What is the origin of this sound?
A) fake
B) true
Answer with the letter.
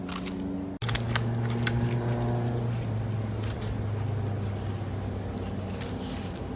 B